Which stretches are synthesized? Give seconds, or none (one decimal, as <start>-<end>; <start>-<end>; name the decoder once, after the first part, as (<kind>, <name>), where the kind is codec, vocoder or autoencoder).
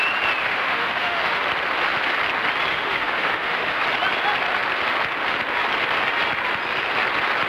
0.4-1.4 (autoencoder, DAC-VAE); 2.7-3.8